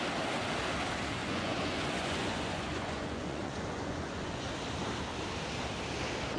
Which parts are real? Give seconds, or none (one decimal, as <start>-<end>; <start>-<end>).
0.0-1.2; 4.5-6.4